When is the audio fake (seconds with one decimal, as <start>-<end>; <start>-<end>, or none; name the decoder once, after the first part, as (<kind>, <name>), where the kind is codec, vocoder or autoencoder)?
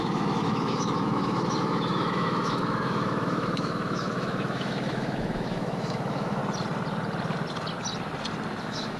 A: 0.0-6.4 (autoencoder, DAC-VAE); 8.6-9.0